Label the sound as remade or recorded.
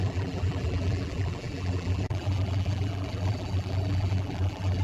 remade